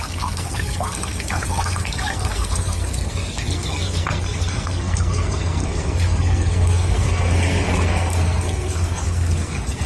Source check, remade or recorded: remade